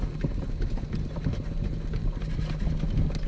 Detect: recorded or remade recorded